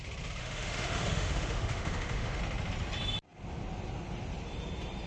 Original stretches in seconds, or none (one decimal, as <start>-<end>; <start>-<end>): 0.0-0.4; 2.4-5.1

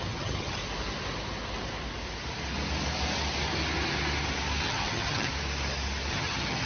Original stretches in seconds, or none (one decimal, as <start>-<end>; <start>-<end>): 0.6-4.6; 5.3-6.1

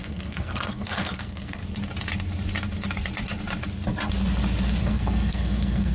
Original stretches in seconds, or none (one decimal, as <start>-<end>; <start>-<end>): 1.6-4.8